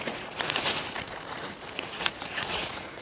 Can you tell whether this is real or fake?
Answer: fake